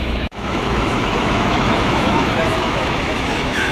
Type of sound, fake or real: fake